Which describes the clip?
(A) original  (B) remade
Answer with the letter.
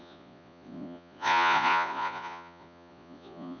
B